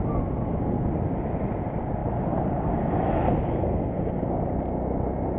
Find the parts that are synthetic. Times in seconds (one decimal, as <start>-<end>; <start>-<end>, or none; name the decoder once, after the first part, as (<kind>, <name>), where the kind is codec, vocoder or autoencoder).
none